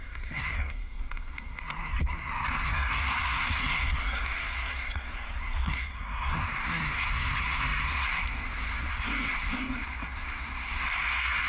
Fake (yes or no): yes